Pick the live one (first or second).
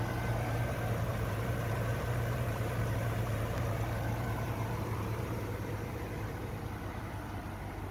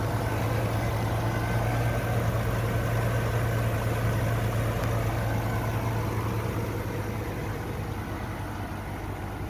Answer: second